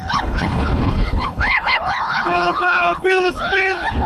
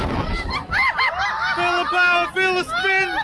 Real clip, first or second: second